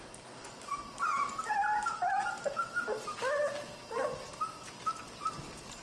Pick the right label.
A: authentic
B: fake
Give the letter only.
A